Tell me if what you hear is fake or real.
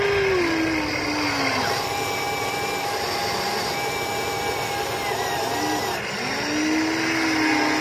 real